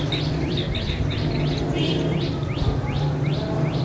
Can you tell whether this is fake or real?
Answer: real